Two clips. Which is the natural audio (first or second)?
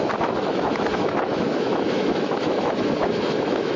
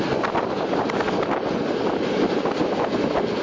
second